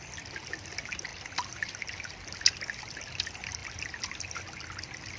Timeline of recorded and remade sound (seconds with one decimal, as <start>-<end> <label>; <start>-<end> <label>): 0.0-5.2 recorded